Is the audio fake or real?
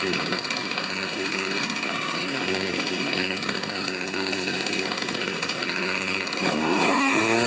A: fake